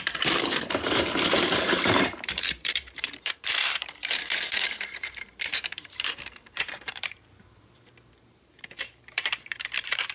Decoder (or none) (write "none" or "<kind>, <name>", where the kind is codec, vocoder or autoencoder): vocoder, BigVGAN v2